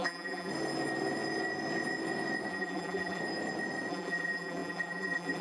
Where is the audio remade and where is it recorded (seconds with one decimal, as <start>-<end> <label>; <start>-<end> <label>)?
0.0-0.5 remade; 0.5-2.5 recorded; 2.5-3.2 remade; 3.2-3.9 recorded; 3.9-5.4 remade